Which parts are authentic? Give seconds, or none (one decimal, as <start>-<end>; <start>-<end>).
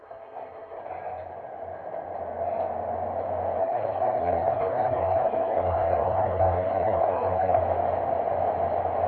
0.8-3.6; 7.6-9.1